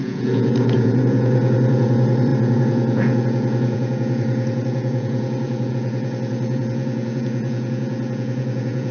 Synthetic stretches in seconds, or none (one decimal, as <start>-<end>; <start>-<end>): 0.0-8.9